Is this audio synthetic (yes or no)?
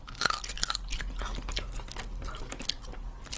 no